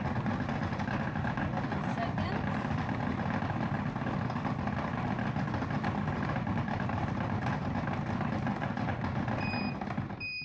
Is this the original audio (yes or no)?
yes